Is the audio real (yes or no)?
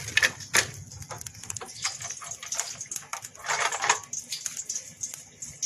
yes